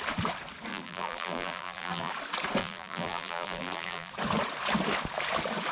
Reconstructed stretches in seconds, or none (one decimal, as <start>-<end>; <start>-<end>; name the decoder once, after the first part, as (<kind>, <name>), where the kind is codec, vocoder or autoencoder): 0.7-2.1 (vocoder, BigVGAN v2); 2.6-4.1